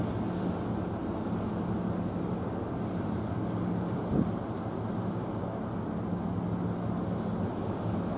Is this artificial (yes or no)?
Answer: no